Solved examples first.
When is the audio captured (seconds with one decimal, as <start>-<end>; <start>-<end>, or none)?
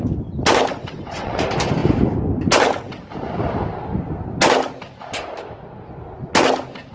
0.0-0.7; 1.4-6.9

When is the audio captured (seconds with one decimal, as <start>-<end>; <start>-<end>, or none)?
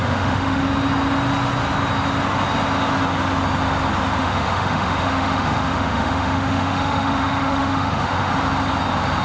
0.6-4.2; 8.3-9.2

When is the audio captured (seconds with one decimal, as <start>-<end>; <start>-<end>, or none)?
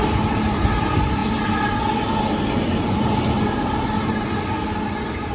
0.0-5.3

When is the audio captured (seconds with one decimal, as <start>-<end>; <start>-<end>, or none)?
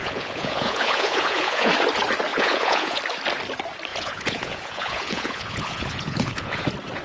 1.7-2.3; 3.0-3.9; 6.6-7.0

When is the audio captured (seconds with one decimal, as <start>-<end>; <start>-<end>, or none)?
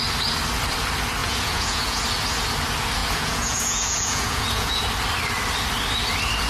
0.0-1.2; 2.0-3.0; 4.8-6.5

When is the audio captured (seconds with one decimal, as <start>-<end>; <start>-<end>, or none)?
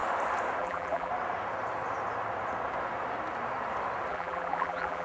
0.0-0.6; 1.1-4.1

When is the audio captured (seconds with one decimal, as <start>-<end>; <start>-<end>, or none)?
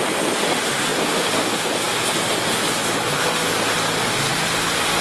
0.0-5.0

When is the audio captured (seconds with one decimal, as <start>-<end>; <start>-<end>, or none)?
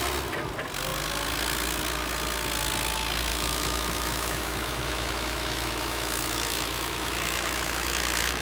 0.0-3.3